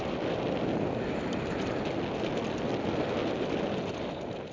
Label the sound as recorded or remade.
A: recorded